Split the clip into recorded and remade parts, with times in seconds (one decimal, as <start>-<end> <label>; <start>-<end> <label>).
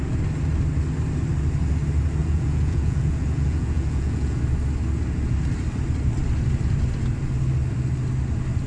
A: 0.0-2.2 recorded; 2.2-4.4 remade; 4.4-8.7 recorded